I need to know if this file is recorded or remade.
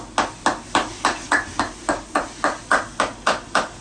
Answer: recorded